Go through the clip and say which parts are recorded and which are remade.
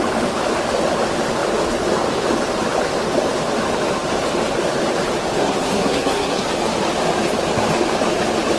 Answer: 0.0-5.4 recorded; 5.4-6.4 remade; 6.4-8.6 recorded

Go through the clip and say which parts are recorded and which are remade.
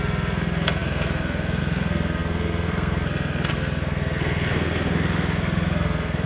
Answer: 0.0-6.3 remade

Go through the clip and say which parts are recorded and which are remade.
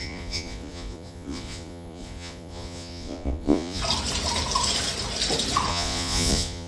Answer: 0.0-3.8 remade; 3.8-5.7 recorded; 5.7-6.7 remade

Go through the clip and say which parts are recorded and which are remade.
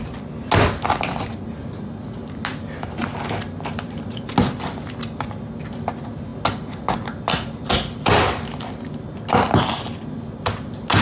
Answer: 0.0-11.0 recorded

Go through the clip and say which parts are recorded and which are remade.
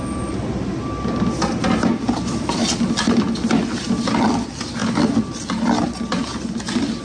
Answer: 0.0-7.0 recorded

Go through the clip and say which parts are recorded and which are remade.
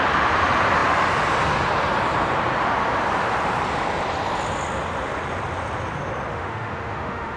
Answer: 0.0-6.3 recorded; 6.3-7.4 remade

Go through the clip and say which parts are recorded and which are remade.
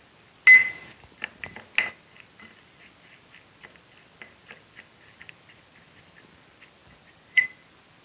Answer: 0.0-6.8 recorded; 6.8-7.4 remade; 7.4-8.0 recorded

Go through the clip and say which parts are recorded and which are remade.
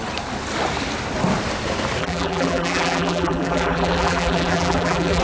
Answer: 0.0-2.0 recorded; 2.0-5.2 remade